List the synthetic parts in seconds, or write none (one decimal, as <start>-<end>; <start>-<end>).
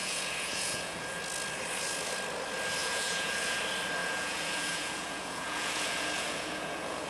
0.0-1.2; 2.8-3.6; 4.0-7.1